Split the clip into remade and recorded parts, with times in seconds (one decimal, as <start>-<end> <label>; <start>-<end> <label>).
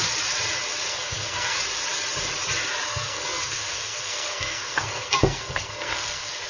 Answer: 0.0-0.9 recorded; 0.9-1.6 remade; 1.6-2.9 recorded; 2.9-6.5 remade